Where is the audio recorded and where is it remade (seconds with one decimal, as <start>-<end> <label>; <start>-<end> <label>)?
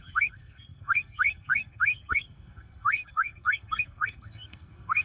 0.0-5.0 remade